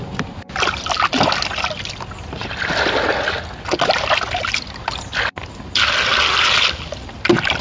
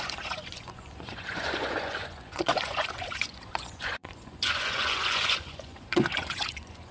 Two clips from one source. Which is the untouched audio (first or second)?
first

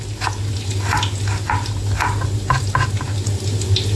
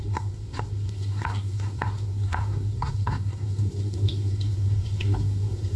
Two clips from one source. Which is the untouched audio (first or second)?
first